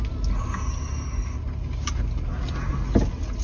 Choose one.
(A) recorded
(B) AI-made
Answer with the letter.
A